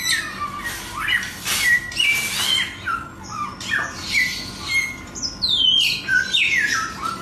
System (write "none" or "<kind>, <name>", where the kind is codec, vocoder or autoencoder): none